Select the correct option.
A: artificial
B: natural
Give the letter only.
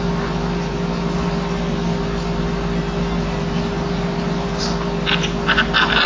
B